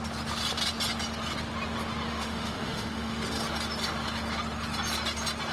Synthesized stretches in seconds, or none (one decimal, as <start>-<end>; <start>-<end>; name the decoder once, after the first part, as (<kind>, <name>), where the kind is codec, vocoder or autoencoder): 2.1-3.2 (autoencoder, DAC-VAE)